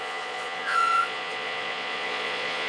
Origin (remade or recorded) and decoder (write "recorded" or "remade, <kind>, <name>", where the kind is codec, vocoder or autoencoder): remade, vocoder, Vocos